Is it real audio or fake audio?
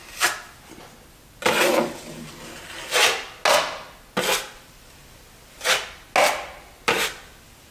real